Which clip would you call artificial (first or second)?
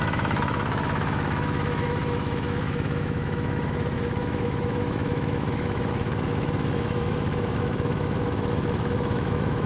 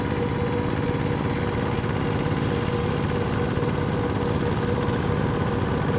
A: first